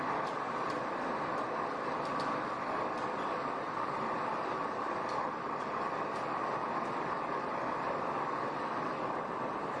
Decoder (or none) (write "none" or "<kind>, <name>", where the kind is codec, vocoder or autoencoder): none